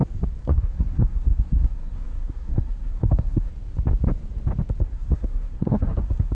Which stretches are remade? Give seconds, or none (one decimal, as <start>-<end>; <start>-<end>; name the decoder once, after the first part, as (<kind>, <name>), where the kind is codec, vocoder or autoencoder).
0.4-3.5 (codec, SNAC); 4.8-6.3